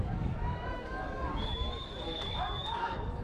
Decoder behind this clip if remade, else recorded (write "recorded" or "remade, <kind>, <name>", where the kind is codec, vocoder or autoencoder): remade, codec, DAC